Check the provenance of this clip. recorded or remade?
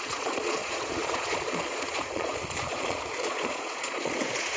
remade